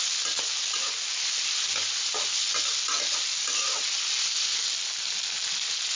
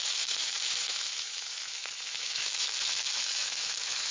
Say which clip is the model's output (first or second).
second